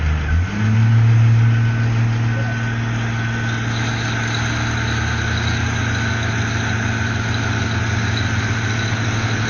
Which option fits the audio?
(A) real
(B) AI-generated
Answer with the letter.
A